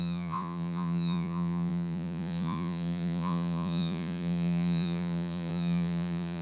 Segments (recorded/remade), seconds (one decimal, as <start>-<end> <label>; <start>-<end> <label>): 0.0-6.4 remade